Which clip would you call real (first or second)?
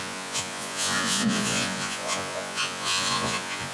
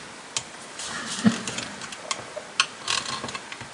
second